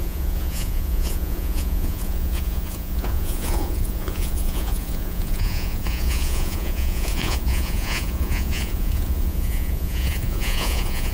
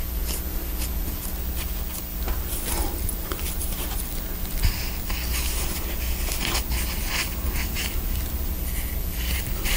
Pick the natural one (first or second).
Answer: second